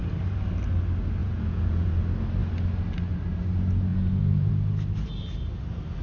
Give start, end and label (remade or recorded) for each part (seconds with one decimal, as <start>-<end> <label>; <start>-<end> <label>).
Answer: 0.0-1.2 recorded; 1.2-1.9 remade; 1.9-3.9 recorded; 3.9-4.5 remade; 4.5-6.0 recorded

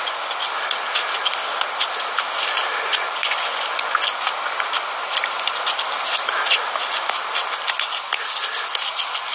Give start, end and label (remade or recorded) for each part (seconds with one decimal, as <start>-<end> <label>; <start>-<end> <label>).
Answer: 0.0-2.9 recorded; 2.9-4.0 remade; 4.0-9.3 recorded

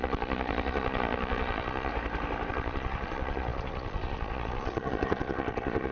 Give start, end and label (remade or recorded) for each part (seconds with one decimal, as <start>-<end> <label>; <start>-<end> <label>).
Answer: 0.0-1.9 remade; 1.9-2.5 recorded; 2.5-5.9 remade

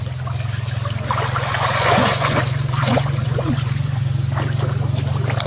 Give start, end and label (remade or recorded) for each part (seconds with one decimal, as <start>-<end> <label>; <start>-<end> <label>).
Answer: 0.0-1.5 recorded; 1.5-4.0 remade; 4.0-5.5 recorded

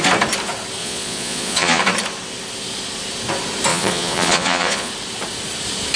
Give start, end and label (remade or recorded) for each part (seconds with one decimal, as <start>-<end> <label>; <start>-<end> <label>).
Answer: 0.0-0.8 recorded; 0.8-1.8 remade; 1.8-3.7 recorded; 3.7-4.9 remade; 4.9-6.0 recorded

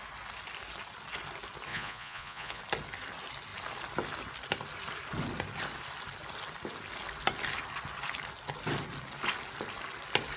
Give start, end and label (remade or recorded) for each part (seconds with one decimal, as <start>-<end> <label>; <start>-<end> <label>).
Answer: 0.0-1.7 recorded; 1.7-2.6 remade; 2.6-10.4 recorded

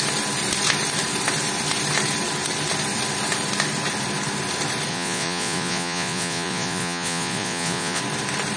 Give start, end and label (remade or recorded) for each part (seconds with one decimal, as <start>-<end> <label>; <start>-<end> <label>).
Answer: 0.0-4.9 recorded; 4.9-8.0 remade; 8.0-8.6 recorded

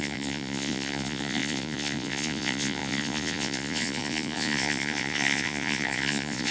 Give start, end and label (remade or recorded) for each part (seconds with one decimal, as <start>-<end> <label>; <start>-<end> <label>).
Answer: 0.0-6.5 remade